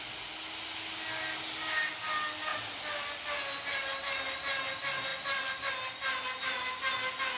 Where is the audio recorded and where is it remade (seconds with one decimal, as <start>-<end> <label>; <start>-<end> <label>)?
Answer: 0.0-5.1 recorded; 5.1-5.7 remade; 5.7-7.4 recorded